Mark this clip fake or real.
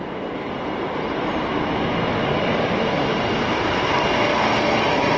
real